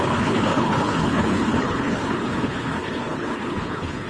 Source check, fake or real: fake